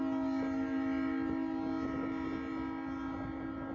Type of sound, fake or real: real